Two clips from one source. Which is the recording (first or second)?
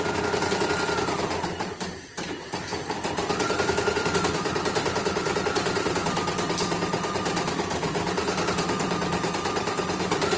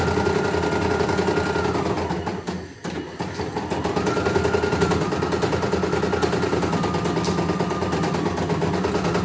second